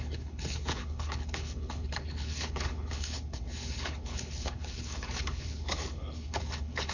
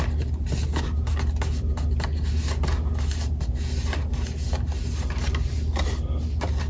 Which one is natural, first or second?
second